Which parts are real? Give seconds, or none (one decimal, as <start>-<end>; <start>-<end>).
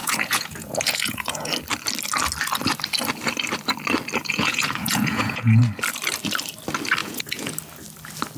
1.5-4.2; 5.6-7.0; 7.5-8.4